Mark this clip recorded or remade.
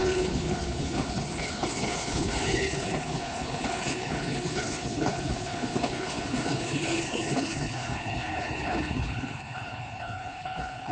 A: remade